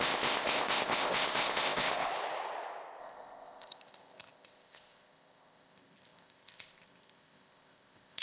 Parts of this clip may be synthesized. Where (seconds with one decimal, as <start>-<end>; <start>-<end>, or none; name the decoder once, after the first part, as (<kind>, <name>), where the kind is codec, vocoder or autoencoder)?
0.0-2.1 (codec, ZipCodec); 3.0-8.2